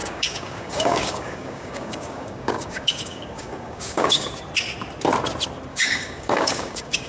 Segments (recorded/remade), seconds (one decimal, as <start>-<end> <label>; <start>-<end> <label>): 0.0-4.3 remade; 4.3-5.7 recorded; 5.7-7.1 remade